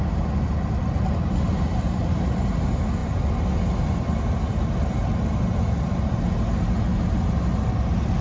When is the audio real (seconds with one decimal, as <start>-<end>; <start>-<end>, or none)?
0.0-8.2